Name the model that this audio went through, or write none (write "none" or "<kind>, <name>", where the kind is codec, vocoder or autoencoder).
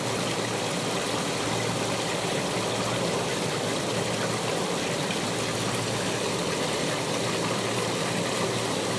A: none